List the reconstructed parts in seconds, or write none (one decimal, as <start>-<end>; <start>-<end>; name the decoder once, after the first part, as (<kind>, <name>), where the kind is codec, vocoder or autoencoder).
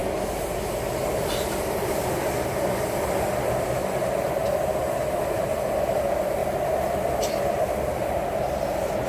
1.9-4.4 (vocoder, BigVGAN v2); 5.2-6.4; 6.9-9.1